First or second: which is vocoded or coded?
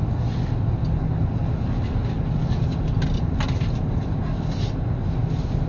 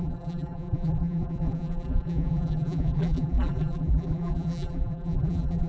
second